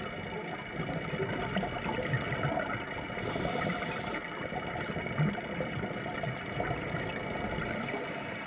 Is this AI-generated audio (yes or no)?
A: no